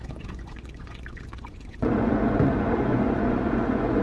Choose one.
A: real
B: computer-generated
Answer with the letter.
B